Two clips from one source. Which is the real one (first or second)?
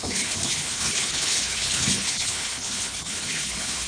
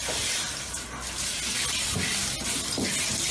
second